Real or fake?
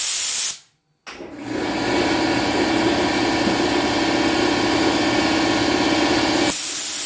real